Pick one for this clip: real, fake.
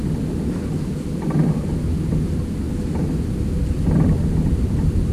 real